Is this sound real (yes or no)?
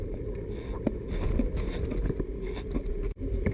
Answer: no